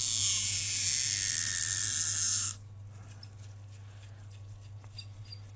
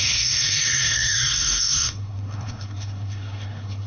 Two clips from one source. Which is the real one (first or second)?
first